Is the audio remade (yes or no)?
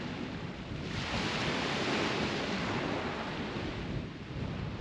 no